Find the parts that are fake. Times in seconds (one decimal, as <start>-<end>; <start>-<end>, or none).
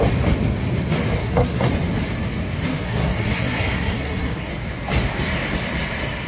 1.2-1.7; 2.8-4.5